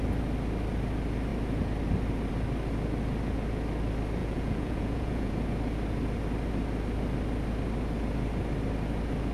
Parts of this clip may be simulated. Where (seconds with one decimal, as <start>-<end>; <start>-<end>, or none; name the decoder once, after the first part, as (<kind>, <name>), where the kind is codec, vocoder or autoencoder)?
4.2-5.3 (vocoder, Vocos)